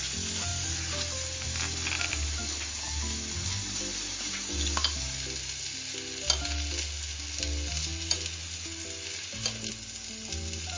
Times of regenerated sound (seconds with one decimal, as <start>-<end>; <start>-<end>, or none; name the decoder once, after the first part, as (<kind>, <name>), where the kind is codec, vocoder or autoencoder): none